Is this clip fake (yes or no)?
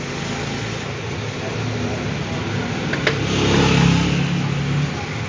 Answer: no